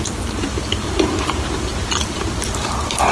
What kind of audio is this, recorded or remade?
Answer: remade